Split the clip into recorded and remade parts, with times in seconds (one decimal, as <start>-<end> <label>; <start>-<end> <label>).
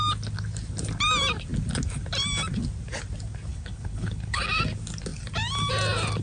0.0-3.5 recorded; 3.5-4.4 remade; 4.4-6.2 recorded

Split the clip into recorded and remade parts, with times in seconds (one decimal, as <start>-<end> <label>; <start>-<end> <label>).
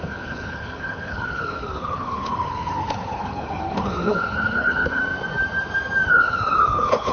0.0-5.0 remade; 5.0-6.1 recorded; 6.1-7.1 remade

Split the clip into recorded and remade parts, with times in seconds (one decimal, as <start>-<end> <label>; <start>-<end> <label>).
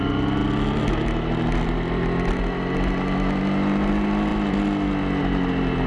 0.0-5.9 recorded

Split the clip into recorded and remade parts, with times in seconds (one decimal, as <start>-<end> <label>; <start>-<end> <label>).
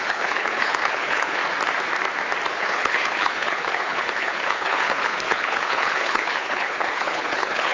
0.0-1.4 remade; 1.4-2.5 recorded; 2.5-7.7 remade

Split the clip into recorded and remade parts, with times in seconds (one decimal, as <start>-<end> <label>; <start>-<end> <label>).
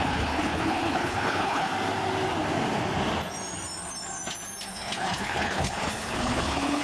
0.0-1.7 remade; 1.7-4.7 recorded; 4.7-6.8 remade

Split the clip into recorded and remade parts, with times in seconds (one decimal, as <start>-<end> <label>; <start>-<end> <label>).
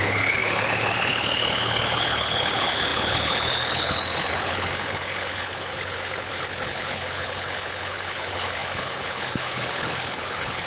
0.0-10.7 remade